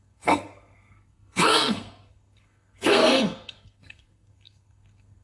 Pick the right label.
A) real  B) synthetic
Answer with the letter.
B